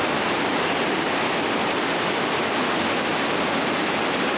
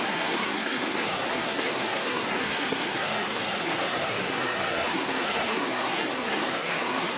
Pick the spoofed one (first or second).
second